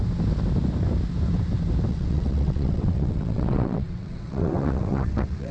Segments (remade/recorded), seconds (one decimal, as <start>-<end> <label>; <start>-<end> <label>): 0.0-1.9 recorded; 1.9-5.5 remade